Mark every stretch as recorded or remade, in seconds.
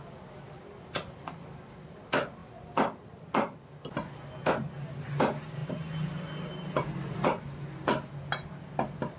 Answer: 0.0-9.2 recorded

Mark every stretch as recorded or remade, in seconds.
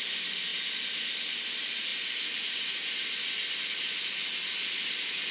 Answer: 0.0-5.3 recorded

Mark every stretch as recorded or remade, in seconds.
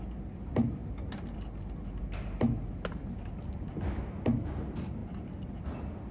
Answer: 0.0-6.1 recorded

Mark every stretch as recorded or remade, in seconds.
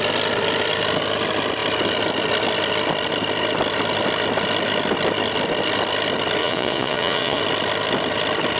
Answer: 0.0-6.4 recorded; 6.4-7.4 remade; 7.4-8.6 recorded